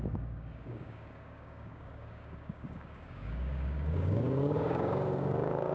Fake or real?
fake